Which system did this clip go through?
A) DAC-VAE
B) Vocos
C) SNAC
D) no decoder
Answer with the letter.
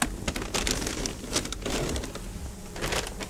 D